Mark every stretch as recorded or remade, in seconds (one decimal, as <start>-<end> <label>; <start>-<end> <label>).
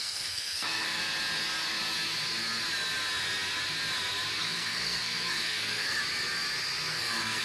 0.0-1.0 remade; 1.0-4.4 recorded; 4.4-6.0 remade; 6.0-6.9 recorded; 6.9-7.4 remade